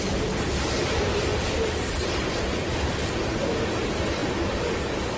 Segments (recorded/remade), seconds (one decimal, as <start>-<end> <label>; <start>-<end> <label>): 0.0-1.3 recorded; 1.3-3.1 remade; 3.1-5.2 recorded

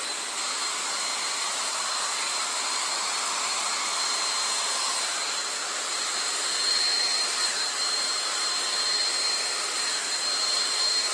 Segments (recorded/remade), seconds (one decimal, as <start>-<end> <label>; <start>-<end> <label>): 0.0-3.5 remade; 3.5-4.6 recorded; 4.6-11.1 remade

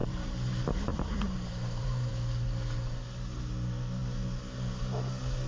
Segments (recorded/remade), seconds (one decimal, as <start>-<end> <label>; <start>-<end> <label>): 0.0-2.1 remade; 2.1-5.5 recorded

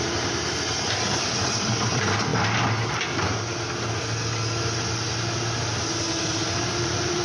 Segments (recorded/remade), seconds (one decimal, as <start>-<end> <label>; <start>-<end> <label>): 0.0-2.3 remade; 2.3-6.6 recorded; 6.6-7.2 remade

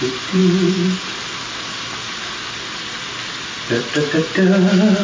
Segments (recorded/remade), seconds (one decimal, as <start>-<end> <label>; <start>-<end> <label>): 0.0-0.4 remade; 0.4-3.3 recorded; 3.3-4.2 remade; 4.2-5.0 recorded

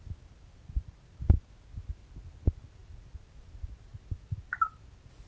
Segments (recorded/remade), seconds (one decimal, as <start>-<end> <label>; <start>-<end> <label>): 0.0-0.5 recorded; 0.5-1.2 remade; 1.2-2.8 recorded; 2.8-3.4 remade; 3.4-3.9 recorded; 3.9-5.3 remade

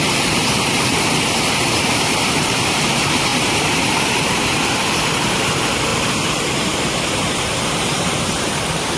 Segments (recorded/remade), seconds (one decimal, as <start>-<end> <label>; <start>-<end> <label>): 0.0-9.0 remade

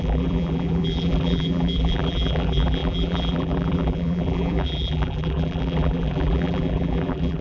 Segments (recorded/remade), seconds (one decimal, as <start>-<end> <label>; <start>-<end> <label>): 0.0-7.4 remade